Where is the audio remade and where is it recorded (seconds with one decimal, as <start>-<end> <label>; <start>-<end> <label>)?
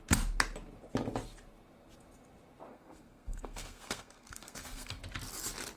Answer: 0.0-2.7 recorded; 2.7-5.0 remade; 5.0-5.8 recorded